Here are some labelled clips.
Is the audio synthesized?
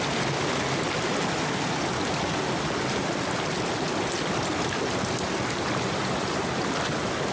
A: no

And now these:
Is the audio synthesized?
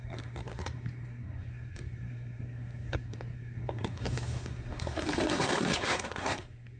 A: yes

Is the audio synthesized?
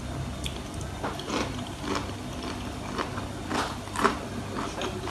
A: no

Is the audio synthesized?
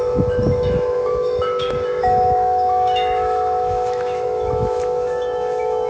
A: yes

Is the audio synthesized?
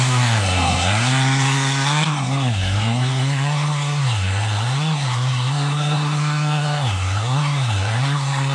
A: yes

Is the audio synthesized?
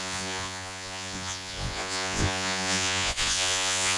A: yes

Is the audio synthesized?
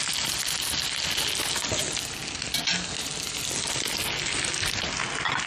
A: no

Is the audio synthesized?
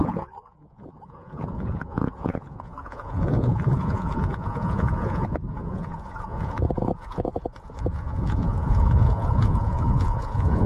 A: yes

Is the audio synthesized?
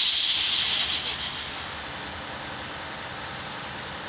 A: no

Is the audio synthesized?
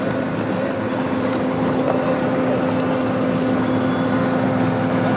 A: no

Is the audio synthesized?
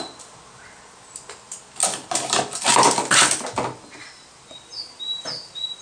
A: no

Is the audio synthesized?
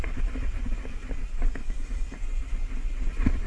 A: no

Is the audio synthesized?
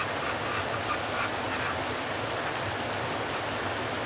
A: no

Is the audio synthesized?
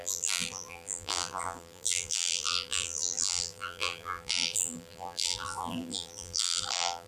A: yes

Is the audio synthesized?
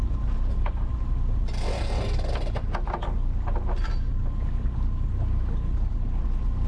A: no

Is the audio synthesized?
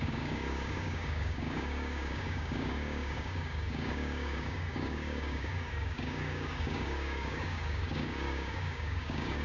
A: yes